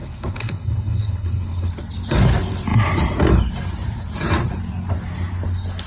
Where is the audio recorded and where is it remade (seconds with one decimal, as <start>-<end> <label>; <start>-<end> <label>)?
0.0-1.7 remade; 1.7-5.9 recorded